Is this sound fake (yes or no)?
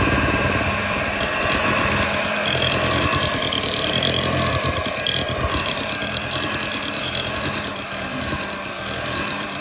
yes